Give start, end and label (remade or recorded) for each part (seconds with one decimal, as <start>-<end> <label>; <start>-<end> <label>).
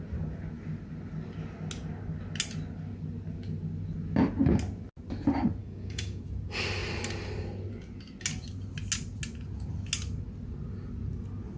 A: 0.0-5.6 recorded; 5.6-6.2 remade; 6.2-11.6 recorded